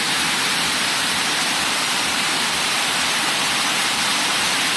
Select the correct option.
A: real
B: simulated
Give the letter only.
B